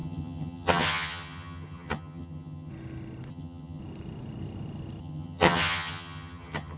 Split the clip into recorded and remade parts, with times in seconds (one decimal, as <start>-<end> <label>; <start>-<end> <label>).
0.0-2.7 remade; 2.7-3.3 recorded; 3.3-3.8 remade; 3.8-5.0 recorded; 5.0-6.8 remade